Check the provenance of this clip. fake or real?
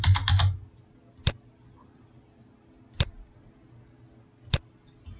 real